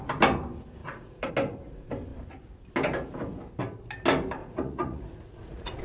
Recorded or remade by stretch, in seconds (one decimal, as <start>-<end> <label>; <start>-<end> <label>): 0.0-0.8 recorded; 0.8-1.3 remade; 1.3-4.4 recorded; 4.4-5.8 remade